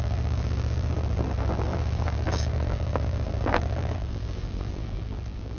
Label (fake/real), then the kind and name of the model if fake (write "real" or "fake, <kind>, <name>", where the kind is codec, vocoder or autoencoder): fake, vocoder, BigVGAN v2